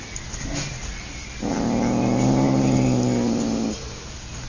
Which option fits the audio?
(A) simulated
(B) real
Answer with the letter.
B